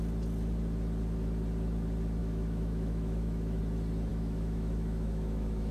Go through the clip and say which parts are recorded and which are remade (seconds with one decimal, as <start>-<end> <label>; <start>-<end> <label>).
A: 0.0-2.2 recorded; 2.2-3.6 remade; 3.6-4.1 recorded; 4.1-5.7 remade